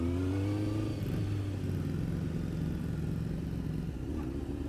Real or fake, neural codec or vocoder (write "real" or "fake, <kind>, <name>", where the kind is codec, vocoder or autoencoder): real